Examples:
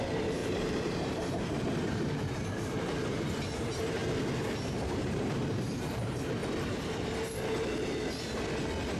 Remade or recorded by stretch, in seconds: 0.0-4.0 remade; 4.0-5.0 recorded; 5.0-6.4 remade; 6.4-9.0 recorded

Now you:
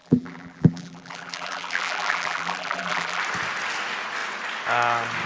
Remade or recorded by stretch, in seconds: 0.0-3.2 remade; 3.2-5.3 recorded